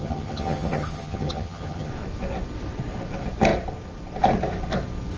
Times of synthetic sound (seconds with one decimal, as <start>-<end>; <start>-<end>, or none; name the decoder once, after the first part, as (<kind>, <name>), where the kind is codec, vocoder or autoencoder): 0.0-1.9 (vocoder, HiFi-GAN)